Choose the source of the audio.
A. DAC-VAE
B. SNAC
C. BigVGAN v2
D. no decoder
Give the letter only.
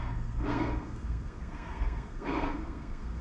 B